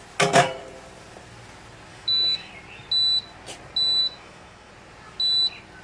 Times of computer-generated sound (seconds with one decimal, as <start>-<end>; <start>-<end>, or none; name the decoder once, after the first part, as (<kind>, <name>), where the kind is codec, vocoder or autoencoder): 1.9-2.5 (autoencoder, DAC-VAE); 4.0-4.7